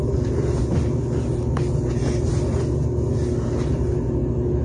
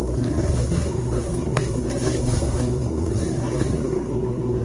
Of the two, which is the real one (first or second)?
first